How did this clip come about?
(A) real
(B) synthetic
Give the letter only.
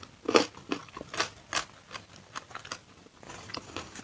A